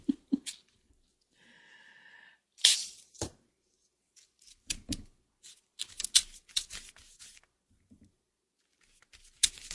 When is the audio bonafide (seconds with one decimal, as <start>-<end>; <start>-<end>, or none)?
0.0-2.3; 4.8-9.7